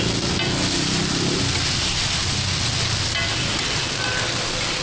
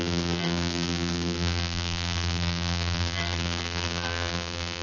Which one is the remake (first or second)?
second